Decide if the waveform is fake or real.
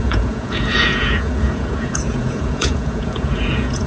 fake